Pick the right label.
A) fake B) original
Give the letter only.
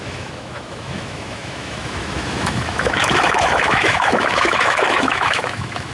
A